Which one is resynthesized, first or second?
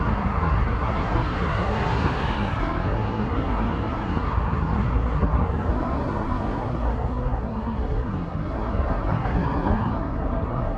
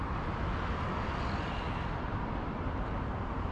first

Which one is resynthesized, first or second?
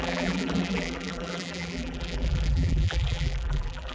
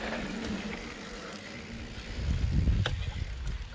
first